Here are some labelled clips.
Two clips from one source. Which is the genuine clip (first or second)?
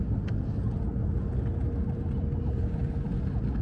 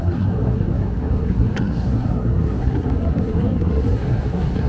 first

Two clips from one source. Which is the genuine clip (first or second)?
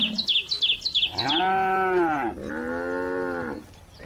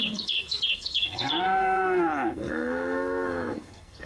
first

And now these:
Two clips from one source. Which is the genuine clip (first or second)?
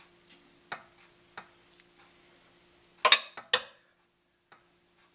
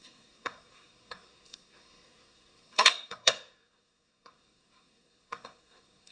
first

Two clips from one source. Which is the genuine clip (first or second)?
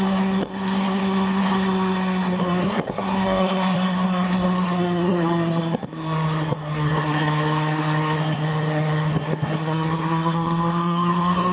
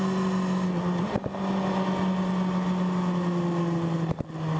second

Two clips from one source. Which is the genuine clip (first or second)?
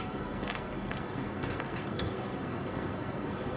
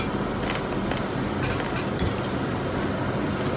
second